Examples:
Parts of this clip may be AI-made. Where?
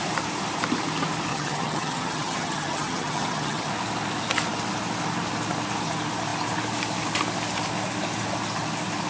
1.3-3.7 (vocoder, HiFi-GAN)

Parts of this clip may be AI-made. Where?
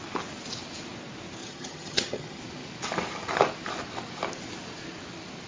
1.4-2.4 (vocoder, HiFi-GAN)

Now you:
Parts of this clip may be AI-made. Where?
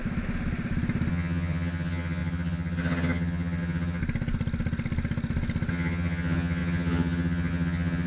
1.1-4.0 (vocoder, HiFi-GAN); 5.7-8.1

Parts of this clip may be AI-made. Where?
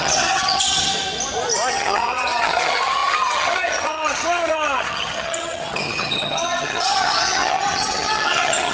0.0-0.9 (vocoder, HiFi-GAN); 1.7-8.7